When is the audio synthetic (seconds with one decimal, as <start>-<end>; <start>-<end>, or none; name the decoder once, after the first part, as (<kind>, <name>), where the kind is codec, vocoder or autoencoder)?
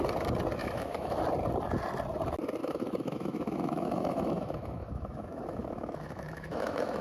0.6-1.2 (autoencoder, DAC-VAE); 2.6-7.0